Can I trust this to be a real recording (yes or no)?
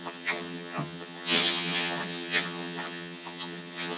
no